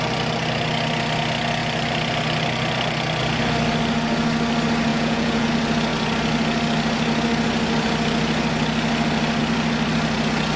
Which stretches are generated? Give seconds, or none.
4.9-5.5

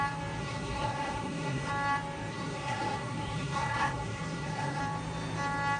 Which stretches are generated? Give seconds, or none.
0.4-1.7; 2.3-4.8

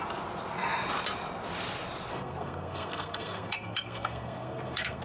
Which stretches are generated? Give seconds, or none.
2.1-5.0

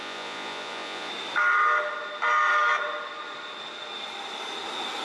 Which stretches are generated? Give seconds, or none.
0.0-1.1